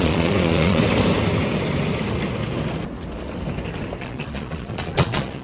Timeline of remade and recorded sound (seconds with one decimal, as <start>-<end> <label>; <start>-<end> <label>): 0.0-0.8 remade; 0.8-4.0 recorded; 4.0-5.4 remade